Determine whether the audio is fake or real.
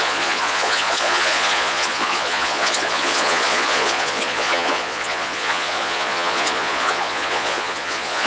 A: fake